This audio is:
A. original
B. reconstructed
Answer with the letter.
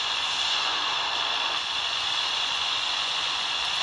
B